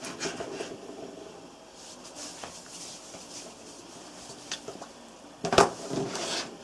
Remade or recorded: remade